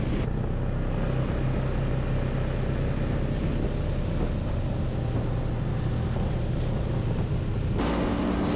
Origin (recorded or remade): recorded